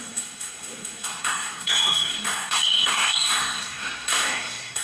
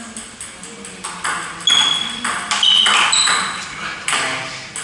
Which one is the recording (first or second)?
second